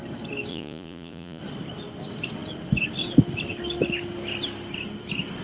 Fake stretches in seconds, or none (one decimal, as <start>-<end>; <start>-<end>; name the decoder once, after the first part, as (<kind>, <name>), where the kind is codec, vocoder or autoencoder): 0.5-1.4 (vocoder, Vocos)